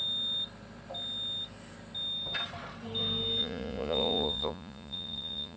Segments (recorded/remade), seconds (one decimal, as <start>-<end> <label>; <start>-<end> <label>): 0.0-3.4 recorded; 3.4-5.6 remade